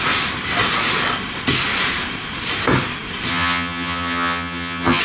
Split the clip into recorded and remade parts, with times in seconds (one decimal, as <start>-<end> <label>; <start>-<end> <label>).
0.0-3.3 recorded; 3.3-5.0 remade